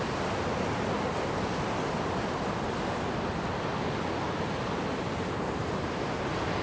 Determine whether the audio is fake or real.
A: real